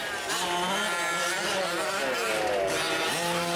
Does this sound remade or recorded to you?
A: recorded